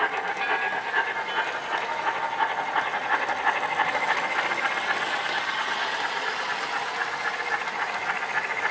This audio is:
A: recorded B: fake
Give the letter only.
A